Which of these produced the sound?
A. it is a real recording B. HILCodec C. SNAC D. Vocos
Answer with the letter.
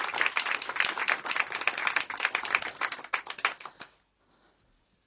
A